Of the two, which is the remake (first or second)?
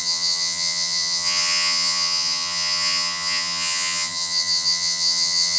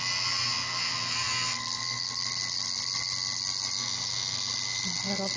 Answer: first